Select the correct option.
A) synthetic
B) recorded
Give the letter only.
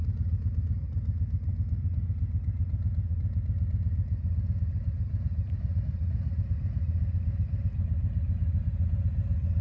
B